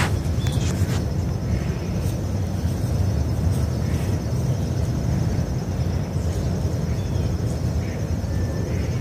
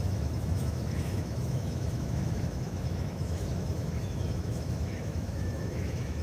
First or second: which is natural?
first